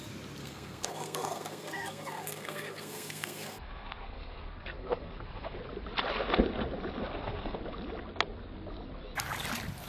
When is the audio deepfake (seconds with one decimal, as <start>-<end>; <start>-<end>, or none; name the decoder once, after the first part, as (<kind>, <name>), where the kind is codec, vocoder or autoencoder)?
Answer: 0.4-5.6 (codec, SNAC); 7.0-7.6